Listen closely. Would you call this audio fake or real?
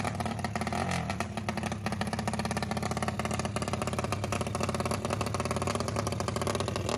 real